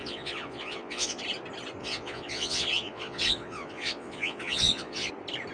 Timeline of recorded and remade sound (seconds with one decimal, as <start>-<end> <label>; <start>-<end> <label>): 0.0-1.2 remade; 1.2-1.8 recorded; 1.8-5.1 remade; 5.1-5.5 recorded